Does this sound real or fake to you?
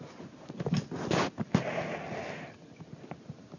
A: real